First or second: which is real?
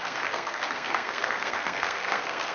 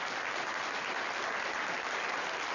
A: second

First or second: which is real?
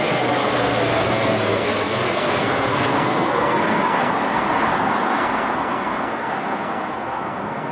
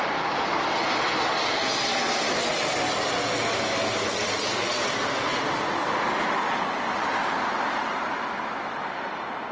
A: second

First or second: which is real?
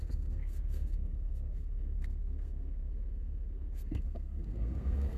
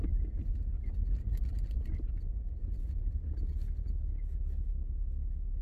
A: second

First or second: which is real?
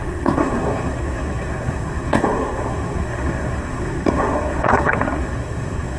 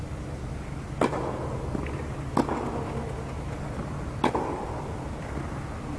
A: second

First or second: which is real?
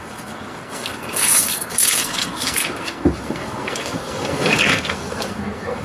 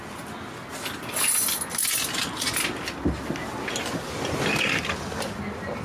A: second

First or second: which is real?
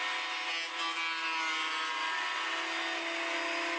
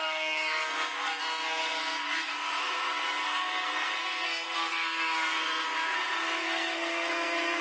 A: first